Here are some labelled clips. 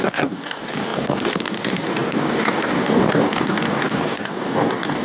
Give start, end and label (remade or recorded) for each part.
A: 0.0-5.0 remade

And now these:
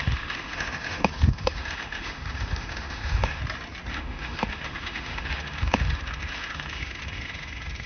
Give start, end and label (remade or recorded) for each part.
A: 0.0-3.4 remade; 3.4-3.9 recorded; 3.9-7.9 remade

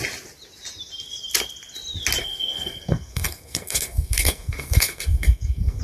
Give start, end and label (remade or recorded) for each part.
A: 0.0-2.2 recorded; 2.2-5.8 remade

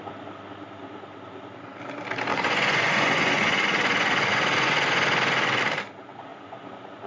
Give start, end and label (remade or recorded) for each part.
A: 0.0-2.3 recorded; 2.3-5.6 remade; 5.6-6.3 recorded; 6.3-7.1 remade

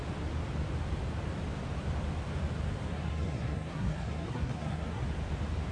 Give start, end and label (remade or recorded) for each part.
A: 0.0-2.9 recorded; 2.9-5.0 remade; 5.0-5.7 recorded